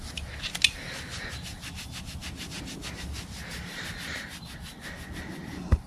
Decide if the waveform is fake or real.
real